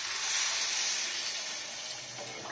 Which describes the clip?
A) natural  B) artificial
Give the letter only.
A